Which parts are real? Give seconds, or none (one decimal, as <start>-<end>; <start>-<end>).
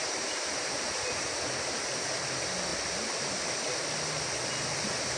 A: 1.5-2.7; 3.3-5.2